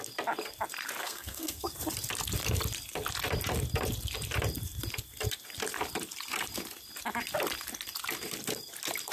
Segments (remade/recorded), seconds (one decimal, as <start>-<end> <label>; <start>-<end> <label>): 0.0-1.0 recorded; 1.0-1.7 remade; 1.7-9.1 recorded